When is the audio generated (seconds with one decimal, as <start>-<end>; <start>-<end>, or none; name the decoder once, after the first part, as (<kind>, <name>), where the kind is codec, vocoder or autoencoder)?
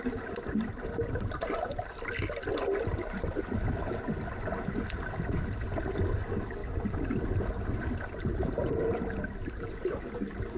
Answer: none